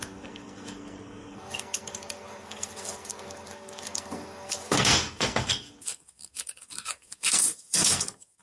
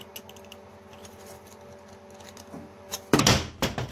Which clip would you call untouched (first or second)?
second